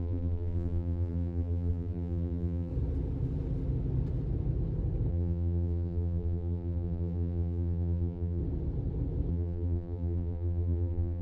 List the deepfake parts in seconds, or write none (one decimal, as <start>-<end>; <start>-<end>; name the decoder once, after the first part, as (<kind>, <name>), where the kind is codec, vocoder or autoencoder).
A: 0.0-2.7 (vocoder, BigVGAN v2); 5.1-8.4; 9.3-11.2